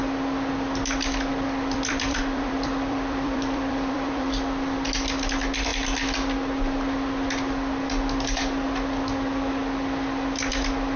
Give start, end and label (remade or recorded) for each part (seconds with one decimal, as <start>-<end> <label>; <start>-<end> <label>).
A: 0.0-1.3 recorded; 1.3-4.3 remade; 4.3-11.0 recorded